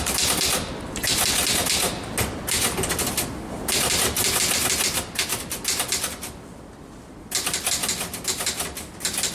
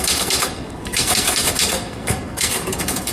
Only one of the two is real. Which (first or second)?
first